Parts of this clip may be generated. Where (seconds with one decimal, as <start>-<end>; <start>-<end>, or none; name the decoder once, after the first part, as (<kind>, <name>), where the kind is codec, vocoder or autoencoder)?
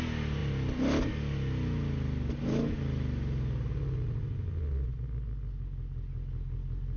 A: none